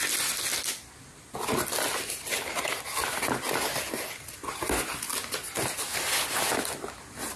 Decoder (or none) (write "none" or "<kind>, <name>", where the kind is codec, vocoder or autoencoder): none